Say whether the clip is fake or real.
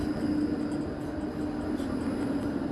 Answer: real